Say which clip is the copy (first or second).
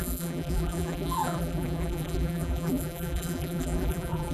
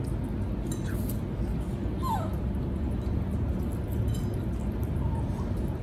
first